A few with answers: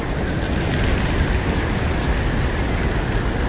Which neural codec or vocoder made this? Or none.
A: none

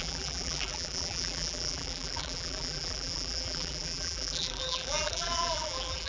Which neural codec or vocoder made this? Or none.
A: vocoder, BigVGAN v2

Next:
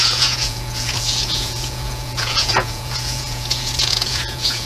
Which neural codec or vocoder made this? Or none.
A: vocoder, Vocos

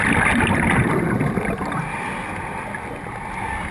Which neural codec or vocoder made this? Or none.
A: none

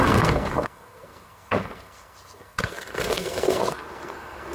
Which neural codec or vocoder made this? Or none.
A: codec, SNAC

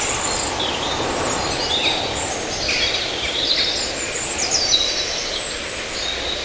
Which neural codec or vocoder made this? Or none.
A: none